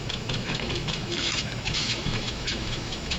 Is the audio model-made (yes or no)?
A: yes